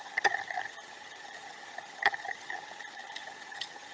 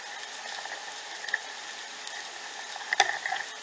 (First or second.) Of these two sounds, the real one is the second